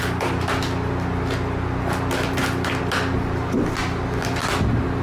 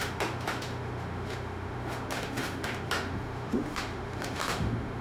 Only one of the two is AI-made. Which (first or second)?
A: second